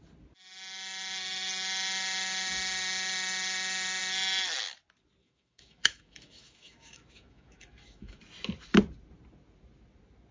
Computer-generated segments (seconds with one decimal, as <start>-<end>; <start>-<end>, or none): 5.2-8.2